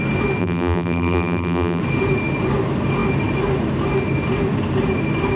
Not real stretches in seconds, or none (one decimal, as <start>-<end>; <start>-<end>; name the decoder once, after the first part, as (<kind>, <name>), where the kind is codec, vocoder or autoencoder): 0.4-1.8 (vocoder, BigVGAN v2)